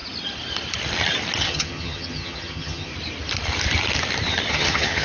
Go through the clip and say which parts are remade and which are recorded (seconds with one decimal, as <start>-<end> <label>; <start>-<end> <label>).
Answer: 0.0-1.4 recorded; 1.4-2.9 remade; 2.9-4.5 recorded; 4.5-5.0 remade